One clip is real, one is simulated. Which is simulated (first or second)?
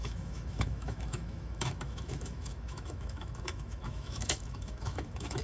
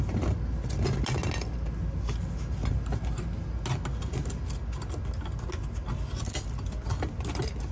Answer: first